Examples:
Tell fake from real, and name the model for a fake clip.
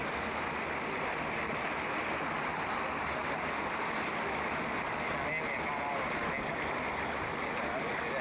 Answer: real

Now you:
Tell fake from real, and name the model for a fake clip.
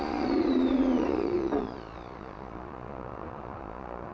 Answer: fake, vocoder, Vocos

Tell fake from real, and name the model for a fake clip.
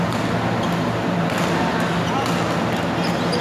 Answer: real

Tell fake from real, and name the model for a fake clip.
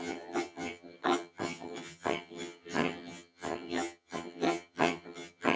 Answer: fake, vocoder, HiFi-GAN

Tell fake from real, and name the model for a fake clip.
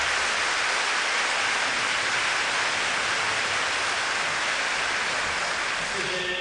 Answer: real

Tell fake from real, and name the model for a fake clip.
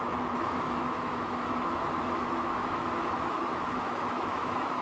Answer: fake, autoencoder, DAC-VAE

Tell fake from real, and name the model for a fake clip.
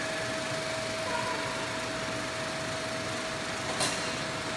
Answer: real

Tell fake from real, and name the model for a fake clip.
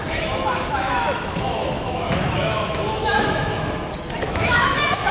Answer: fake, autoencoder, DAC-VAE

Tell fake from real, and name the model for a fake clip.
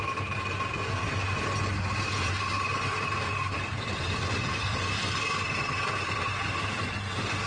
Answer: real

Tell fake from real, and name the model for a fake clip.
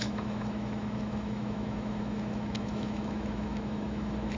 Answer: fake, autoencoder, DAC-VAE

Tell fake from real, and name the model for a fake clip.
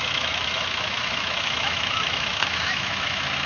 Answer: fake, autoencoder, DAC-VAE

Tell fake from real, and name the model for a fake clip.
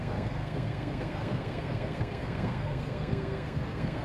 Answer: fake, codec, SNAC